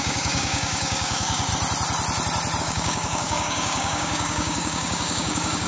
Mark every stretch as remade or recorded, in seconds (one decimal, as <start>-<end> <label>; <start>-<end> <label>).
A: 0.0-1.5 remade; 1.5-2.6 recorded; 2.6-5.7 remade